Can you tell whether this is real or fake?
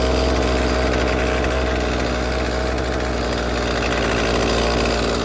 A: real